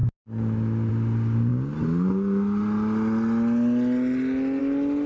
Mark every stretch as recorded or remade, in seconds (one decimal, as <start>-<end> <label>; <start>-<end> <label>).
0.0-5.1 recorded

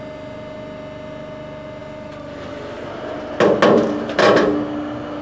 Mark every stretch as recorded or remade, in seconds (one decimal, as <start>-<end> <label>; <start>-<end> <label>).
0.0-5.2 recorded

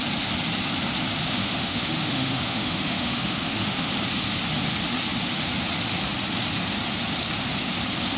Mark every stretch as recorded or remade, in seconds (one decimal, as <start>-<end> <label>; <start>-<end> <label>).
0.0-1.4 recorded; 1.4-3.9 remade; 3.9-8.2 recorded

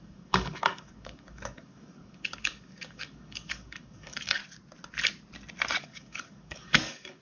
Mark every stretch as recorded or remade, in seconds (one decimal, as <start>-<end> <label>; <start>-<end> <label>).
0.0-4.4 remade; 4.4-5.8 recorded; 5.8-7.2 remade

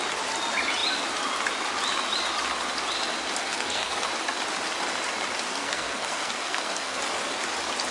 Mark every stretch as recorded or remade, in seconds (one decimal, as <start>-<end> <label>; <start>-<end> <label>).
0.0-3.4 recorded; 3.4-4.1 remade; 4.1-5.5 recorded; 5.5-7.0 remade; 7.0-7.9 recorded

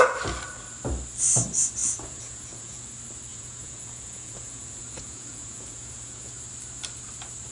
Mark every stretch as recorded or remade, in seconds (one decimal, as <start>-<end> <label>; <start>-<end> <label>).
0.0-1.8 recorded; 1.8-2.9 remade; 2.9-3.3 recorded; 3.3-6.3 remade; 6.3-7.5 recorded

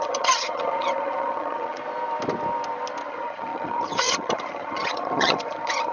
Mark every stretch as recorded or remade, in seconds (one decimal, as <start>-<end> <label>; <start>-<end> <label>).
0.0-1.8 remade; 1.8-3.1 recorded; 3.1-5.9 remade

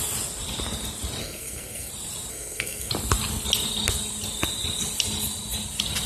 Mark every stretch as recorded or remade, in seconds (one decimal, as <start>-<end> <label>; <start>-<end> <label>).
0.0-1.2 recorded; 1.2-1.9 remade; 1.9-2.3 recorded; 2.3-2.9 remade; 2.9-6.1 recorded